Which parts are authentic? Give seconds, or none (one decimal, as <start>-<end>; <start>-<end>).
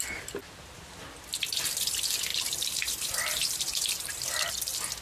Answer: 0.0-2.3; 4.5-5.0